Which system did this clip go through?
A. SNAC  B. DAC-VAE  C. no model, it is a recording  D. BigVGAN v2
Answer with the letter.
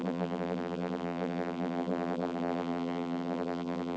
D